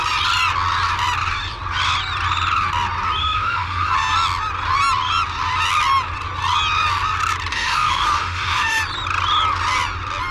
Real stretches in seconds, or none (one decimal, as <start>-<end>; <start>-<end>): 0.0-3.2; 3.9-7.5; 8.8-10.3